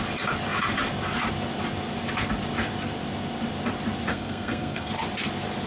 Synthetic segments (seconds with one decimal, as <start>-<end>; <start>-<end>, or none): 4.1-4.9